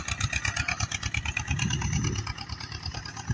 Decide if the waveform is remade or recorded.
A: recorded